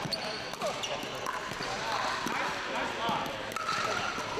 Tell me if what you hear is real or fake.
real